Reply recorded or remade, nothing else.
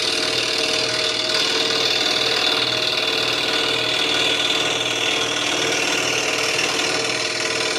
recorded